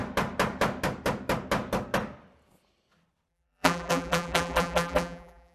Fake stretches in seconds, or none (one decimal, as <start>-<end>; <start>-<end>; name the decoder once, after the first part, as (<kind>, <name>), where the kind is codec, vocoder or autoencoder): 3.3-5.5 (vocoder, BigVGAN v2)

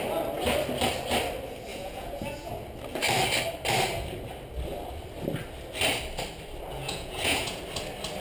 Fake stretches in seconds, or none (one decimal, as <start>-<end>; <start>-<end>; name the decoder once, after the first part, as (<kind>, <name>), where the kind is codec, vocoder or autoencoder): 1.7-2.5 (vocoder, Vocos); 6.7-7.6

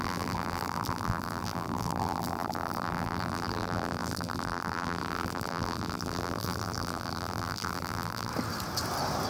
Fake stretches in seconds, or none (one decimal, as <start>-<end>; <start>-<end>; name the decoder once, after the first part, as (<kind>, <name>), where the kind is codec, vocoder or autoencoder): 0.0-8.3 (vocoder, BigVGAN v2)

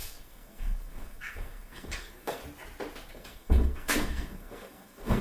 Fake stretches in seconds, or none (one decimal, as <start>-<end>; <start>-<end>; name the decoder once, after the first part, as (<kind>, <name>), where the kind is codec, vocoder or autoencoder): 0.0-2.4 (codec, SNAC); 3.1-5.2